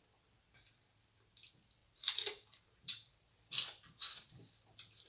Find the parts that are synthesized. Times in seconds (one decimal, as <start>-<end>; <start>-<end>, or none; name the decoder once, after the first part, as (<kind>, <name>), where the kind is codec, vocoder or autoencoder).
1.8-4.5 (vocoder, BigVGAN v2)